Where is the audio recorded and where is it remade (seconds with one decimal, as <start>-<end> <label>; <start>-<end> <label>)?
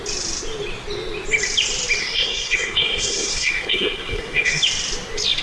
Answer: 0.0-2.0 recorded; 2.0-4.6 remade; 4.6-5.4 recorded